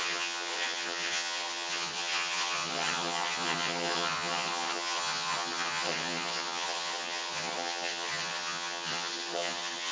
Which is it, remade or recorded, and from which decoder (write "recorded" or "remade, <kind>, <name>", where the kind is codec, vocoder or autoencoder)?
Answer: remade, vocoder, HiFi-GAN